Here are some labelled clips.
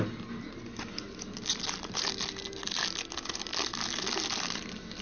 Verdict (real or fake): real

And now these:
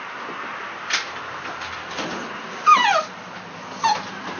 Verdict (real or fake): real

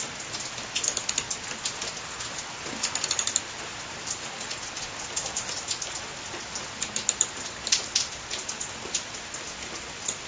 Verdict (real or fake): real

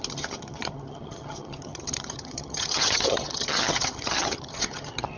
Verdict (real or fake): fake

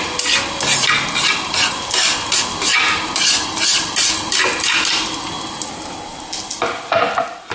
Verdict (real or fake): real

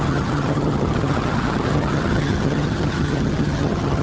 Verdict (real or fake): fake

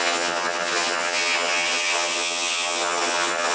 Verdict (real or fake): fake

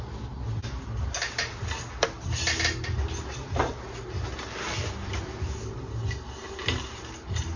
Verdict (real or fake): real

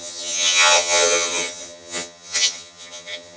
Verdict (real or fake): fake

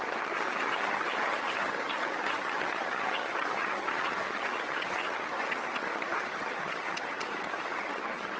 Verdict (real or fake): fake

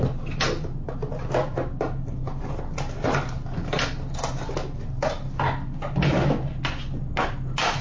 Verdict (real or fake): real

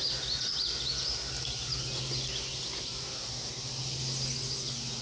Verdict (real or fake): real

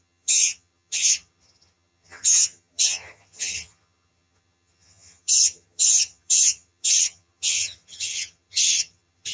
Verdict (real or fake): fake